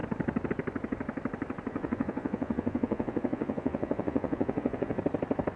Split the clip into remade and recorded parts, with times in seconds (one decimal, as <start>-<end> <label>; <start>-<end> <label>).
0.0-1.7 recorded; 1.7-5.0 remade; 5.0-5.6 recorded